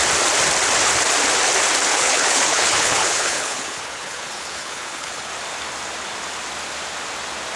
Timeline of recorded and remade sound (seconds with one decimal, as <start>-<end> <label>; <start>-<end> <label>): 0.0-1.9 recorded; 1.9-5.3 remade; 5.3-7.6 recorded